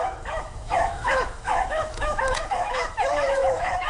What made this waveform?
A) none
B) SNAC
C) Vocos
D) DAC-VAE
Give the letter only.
D